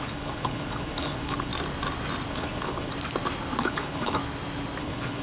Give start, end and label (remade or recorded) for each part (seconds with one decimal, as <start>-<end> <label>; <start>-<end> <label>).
0.0-1.5 remade; 1.5-2.3 recorded; 2.3-2.9 remade; 2.9-3.6 recorded; 3.6-4.2 remade; 4.2-4.8 recorded; 4.8-5.2 remade